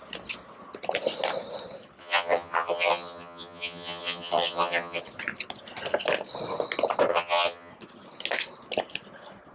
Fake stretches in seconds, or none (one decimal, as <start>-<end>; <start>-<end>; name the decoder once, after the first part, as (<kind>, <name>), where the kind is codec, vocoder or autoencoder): 2.0-5.0 (vocoder, HiFi-GAN); 7.1-7.7